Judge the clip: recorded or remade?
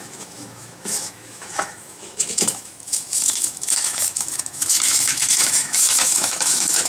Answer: remade